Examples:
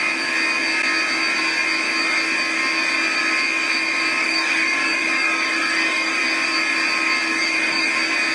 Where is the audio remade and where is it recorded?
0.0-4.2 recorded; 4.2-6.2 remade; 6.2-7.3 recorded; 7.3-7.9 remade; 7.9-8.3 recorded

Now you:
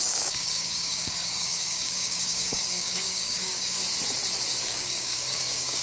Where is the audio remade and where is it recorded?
0.0-3.8 remade; 3.8-4.6 recorded; 4.6-5.8 remade

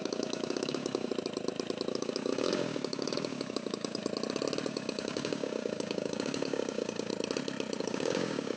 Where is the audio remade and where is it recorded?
0.0-1.1 remade; 1.1-1.9 recorded; 1.9-4.0 remade; 4.0-4.7 recorded; 4.7-7.1 remade; 7.1-7.8 recorded; 7.8-8.6 remade

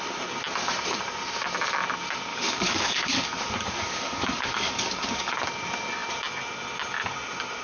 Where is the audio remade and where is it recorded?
0.0-2.3 recorded; 2.3-5.3 remade; 5.3-7.6 recorded

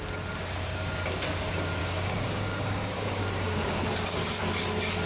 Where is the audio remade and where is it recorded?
0.0-1.8 recorded; 1.8-4.4 remade; 4.4-5.1 recorded

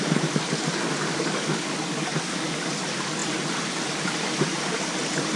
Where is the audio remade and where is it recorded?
0.0-1.1 recorded; 1.1-2.7 remade; 2.7-5.4 recorded

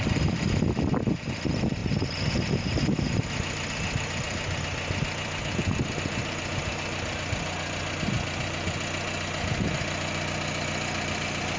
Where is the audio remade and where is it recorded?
0.0-11.6 recorded